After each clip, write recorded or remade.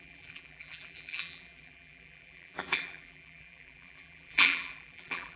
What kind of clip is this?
remade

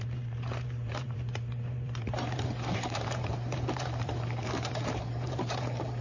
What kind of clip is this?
remade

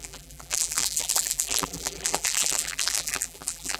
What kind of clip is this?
remade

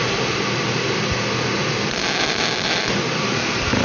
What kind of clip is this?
remade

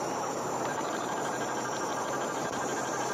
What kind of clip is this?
remade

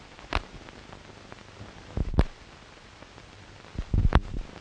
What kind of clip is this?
remade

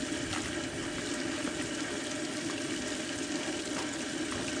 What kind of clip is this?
recorded